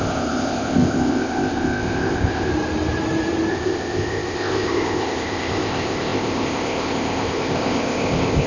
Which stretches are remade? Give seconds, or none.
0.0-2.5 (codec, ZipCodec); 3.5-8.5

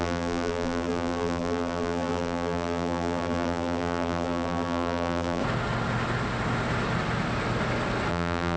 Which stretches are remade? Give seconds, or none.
0.0-5.4 (vocoder, BigVGAN v2); 8.1-8.6

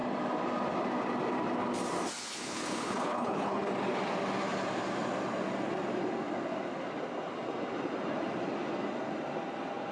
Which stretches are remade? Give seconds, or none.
2.2-3.7 (codec, HILCodec)

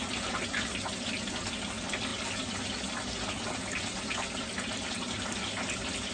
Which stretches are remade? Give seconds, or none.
none

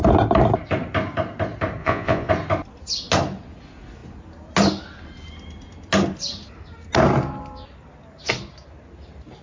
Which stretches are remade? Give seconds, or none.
1.8-2.3 (vocoder, Vocos)